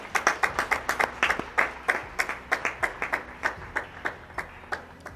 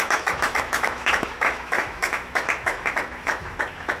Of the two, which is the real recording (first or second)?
first